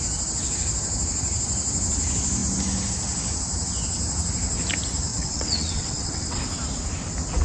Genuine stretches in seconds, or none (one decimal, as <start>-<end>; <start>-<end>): 0.0-5.1; 6.4-7.4